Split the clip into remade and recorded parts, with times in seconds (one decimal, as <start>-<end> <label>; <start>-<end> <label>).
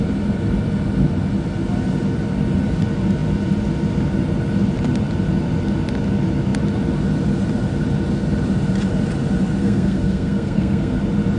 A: 0.0-9.6 recorded; 9.6-11.0 remade; 11.0-11.4 recorded